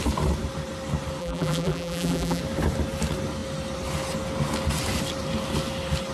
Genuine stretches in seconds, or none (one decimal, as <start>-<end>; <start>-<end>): 0.0-1.2; 2.4-6.1